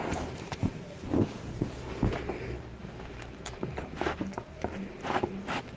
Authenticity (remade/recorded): recorded